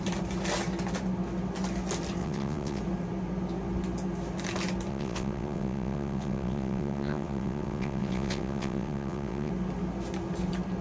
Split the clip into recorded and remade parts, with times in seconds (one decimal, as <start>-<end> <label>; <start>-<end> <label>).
0.0-2.2 recorded; 2.2-2.8 remade; 2.8-4.9 recorded; 4.9-9.5 remade; 9.5-10.8 recorded